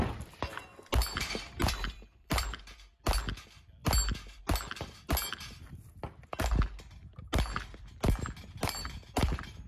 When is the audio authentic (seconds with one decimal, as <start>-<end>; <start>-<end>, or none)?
0.0-1.0; 2.6-9.7